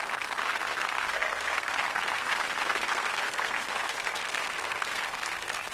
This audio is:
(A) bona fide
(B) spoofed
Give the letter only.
B